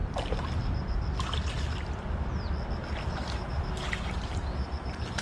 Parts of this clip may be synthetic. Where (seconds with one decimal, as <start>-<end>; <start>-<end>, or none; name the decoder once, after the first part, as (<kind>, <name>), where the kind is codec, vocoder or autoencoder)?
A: 3.1-5.2 (vocoder, BigVGAN v2)